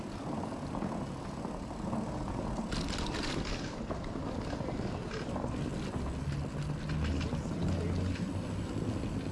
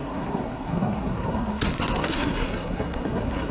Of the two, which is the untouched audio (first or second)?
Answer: first